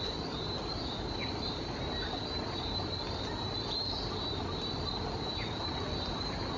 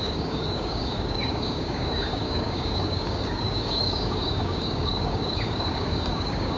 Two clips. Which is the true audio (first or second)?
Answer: first